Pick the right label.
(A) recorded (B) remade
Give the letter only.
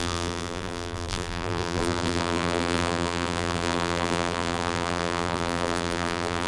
B